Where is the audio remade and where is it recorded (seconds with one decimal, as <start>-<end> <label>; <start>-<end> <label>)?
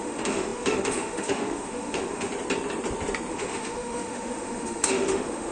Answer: 0.0-2.3 remade; 2.3-3.3 recorded; 3.3-5.5 remade